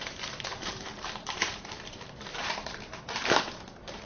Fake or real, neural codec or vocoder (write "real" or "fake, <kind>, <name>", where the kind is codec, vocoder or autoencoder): fake, vocoder, BigVGAN v2